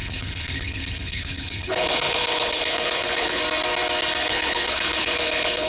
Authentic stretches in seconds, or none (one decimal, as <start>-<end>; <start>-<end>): 3.4-4.2